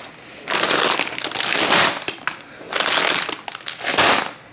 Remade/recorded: recorded